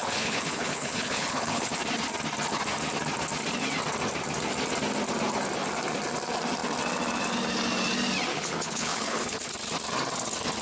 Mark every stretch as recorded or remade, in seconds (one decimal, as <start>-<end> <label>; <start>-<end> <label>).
0.0-1.7 remade; 1.7-8.3 recorded; 8.3-9.5 remade; 9.5-10.6 recorded